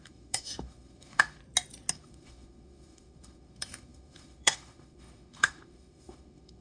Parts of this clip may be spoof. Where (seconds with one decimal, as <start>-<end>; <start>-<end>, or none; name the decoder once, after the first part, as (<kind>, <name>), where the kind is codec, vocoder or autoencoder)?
0.0-1.4 (autoencoder, DAC-VAE); 1.9-6.6